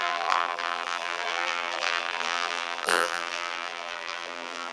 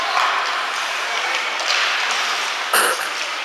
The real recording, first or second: second